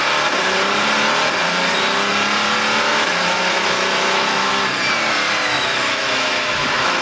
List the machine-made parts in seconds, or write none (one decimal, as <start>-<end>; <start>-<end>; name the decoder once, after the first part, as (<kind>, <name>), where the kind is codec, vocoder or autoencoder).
2.9-4.5 (autoencoder, DAC-VAE); 5.4-7.0